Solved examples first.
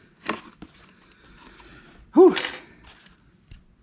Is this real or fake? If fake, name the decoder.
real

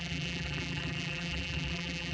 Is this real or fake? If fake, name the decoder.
fake, vocoder, BigVGAN v2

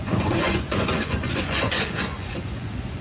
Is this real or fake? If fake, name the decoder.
fake, vocoder, Vocos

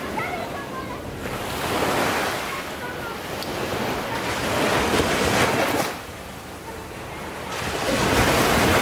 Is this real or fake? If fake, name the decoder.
real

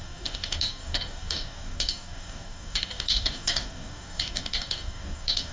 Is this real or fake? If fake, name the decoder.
fake, codec, DAC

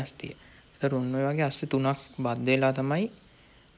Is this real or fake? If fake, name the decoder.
real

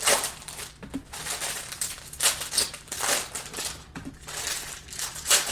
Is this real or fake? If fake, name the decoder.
fake, vocoder, BigVGAN v2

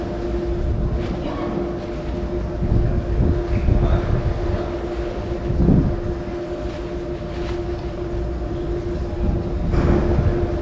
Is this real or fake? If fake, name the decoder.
real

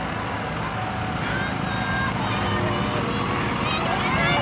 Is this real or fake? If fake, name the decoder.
real